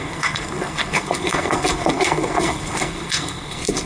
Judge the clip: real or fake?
fake